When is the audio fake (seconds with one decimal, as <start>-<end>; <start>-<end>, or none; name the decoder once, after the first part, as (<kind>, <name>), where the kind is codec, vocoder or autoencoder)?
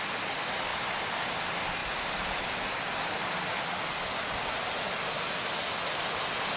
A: none